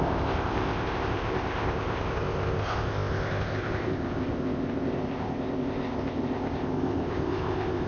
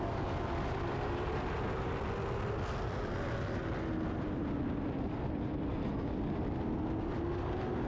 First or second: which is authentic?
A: second